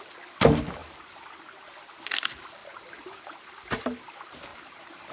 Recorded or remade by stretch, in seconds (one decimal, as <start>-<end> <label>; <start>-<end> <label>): 0.0-0.8 recorded; 0.8-1.4 remade; 1.4-2.6 recorded; 2.6-3.8 remade; 3.8-4.5 recorded; 4.5-5.1 remade